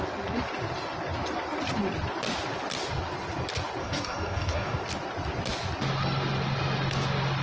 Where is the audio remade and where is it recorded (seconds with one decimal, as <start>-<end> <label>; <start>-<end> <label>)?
0.0-3.8 recorded; 3.8-4.8 remade; 4.8-7.4 recorded